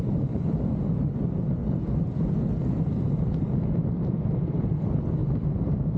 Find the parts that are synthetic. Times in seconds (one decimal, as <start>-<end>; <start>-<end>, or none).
none